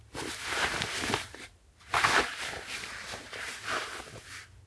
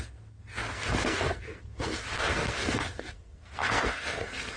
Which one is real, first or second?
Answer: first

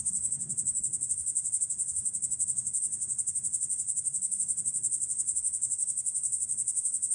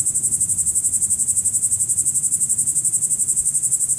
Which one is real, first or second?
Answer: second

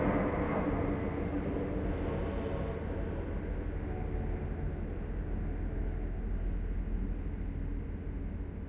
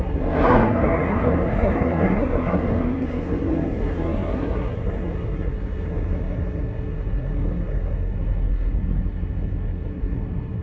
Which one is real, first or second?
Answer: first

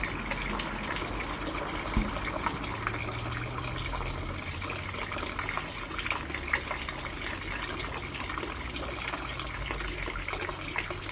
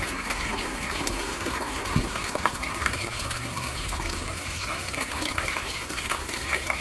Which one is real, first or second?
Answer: first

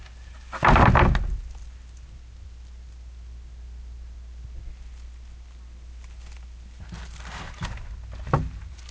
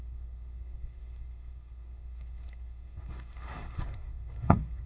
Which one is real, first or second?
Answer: first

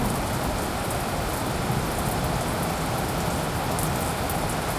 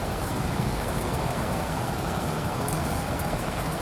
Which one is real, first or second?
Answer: first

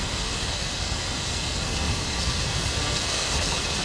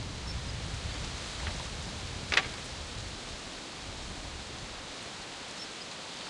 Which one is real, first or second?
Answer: second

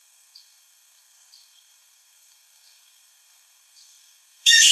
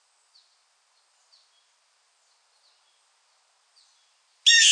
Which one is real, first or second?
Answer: second